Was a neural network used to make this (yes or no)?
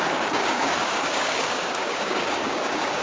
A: yes